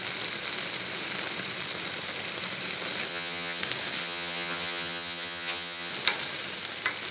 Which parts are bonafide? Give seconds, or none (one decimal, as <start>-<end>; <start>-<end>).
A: 0.0-3.1; 3.6-4.0; 5.9-7.1